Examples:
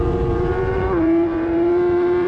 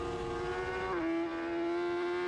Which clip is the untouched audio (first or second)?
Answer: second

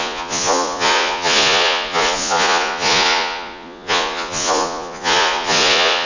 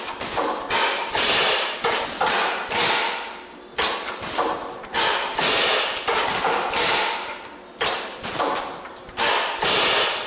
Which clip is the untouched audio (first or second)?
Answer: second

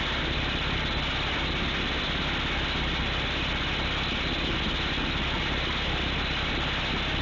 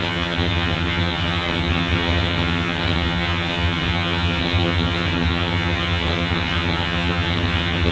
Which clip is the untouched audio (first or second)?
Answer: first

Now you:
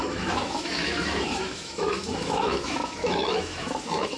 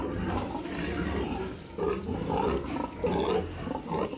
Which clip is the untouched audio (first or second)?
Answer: second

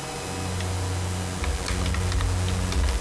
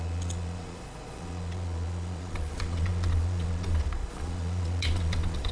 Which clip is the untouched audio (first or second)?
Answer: first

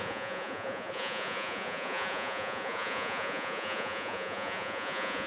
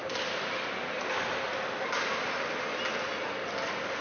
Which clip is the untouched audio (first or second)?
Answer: second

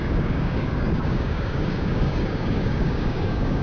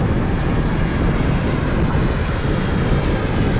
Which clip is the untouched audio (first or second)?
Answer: second